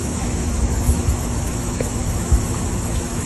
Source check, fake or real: fake